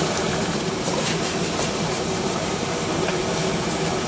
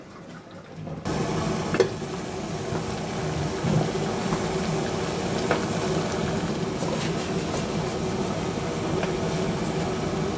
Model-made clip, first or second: first